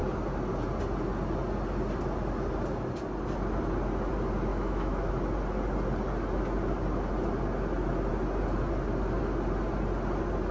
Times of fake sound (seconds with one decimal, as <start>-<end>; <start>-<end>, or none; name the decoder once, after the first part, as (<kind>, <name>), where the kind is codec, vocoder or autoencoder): 4.5-5.1 (autoencoder, DAC-VAE)